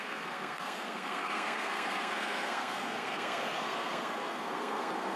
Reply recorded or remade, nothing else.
remade